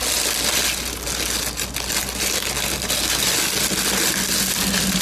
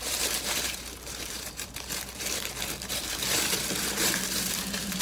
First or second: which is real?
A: first